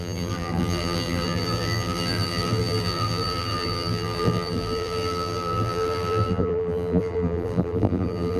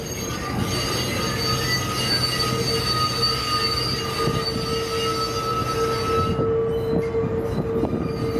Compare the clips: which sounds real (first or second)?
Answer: second